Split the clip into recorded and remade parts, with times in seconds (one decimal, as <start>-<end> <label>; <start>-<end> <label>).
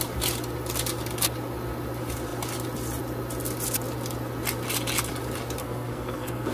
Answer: 0.0-5.6 recorded; 5.6-6.5 remade